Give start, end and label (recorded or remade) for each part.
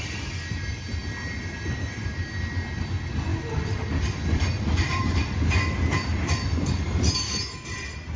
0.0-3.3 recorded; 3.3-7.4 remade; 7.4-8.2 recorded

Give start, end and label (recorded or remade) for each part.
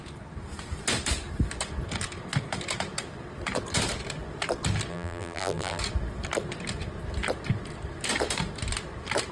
0.0-4.9 recorded; 4.9-5.8 remade; 5.8-9.3 recorded